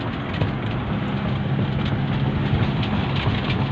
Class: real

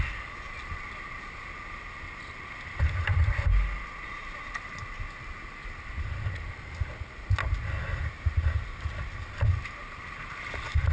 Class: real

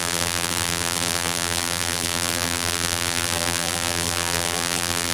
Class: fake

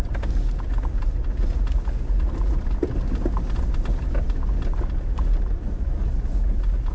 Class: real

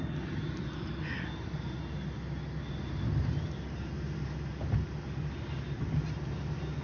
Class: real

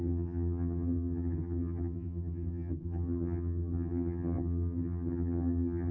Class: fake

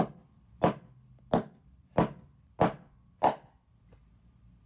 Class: real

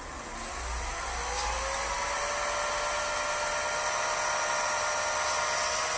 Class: real